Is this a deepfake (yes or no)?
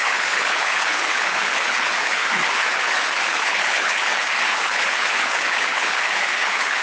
yes